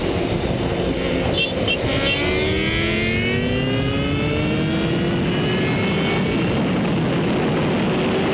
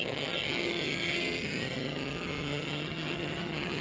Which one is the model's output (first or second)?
second